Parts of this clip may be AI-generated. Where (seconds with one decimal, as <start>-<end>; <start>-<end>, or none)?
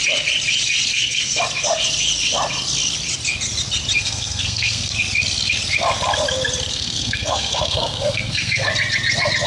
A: 0.9-1.4; 4.0-4.9; 6.7-8.7